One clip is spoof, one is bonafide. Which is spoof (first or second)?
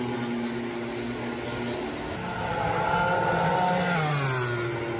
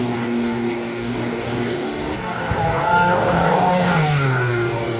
second